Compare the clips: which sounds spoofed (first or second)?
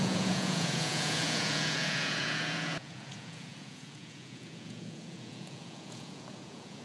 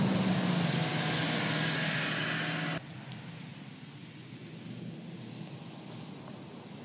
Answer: first